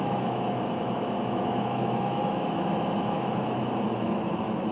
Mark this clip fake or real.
fake